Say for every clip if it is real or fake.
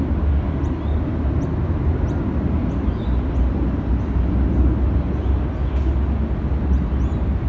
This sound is real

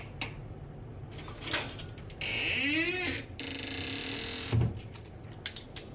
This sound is real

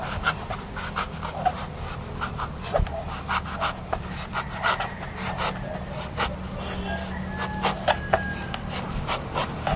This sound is real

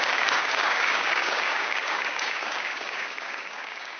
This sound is fake